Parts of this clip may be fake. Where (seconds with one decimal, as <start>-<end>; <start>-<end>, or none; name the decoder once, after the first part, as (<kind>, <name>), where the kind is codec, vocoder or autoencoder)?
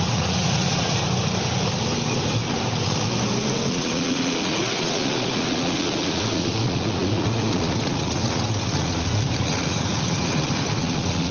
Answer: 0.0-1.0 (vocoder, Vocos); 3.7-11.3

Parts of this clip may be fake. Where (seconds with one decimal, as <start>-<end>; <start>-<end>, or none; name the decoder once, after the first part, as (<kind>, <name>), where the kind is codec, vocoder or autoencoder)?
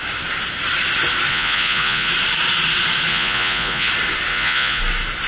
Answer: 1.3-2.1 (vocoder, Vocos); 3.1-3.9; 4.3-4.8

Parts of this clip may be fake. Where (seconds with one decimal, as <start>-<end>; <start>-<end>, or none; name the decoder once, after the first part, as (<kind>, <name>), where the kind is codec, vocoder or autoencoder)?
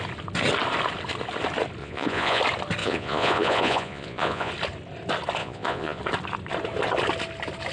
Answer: 1.8-2.4 (vocoder, Vocos); 2.8-4.5; 5.4-6.0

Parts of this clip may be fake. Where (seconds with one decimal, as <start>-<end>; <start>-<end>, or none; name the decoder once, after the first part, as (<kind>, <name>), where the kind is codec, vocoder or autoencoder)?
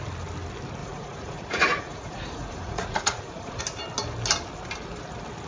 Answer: 0.8-3.6 (vocoder, Vocos)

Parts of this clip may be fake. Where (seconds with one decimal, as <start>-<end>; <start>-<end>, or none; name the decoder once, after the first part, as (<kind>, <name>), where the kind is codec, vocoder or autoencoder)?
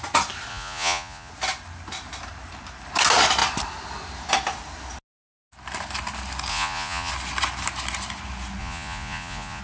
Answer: 0.5-1.3 (vocoder, Vocos); 6.5-7.1; 8.6-9.6